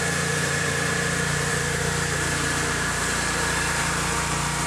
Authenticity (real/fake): fake